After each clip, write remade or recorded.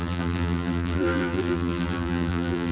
remade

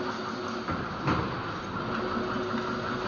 recorded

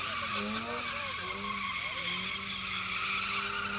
recorded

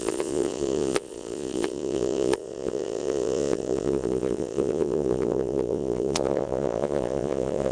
remade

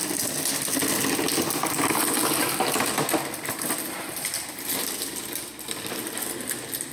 recorded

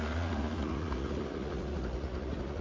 remade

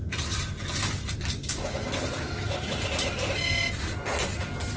recorded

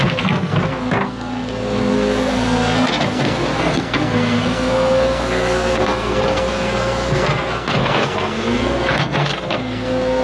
remade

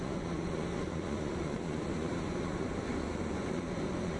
remade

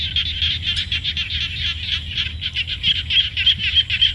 recorded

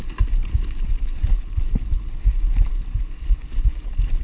recorded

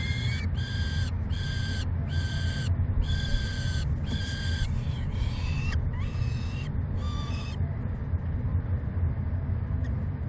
recorded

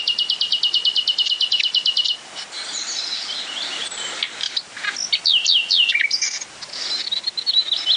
recorded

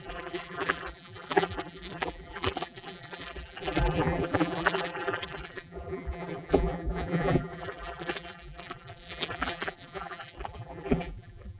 remade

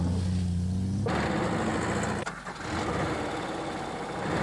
recorded